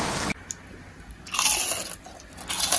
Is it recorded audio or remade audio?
recorded